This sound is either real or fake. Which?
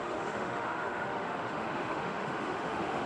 fake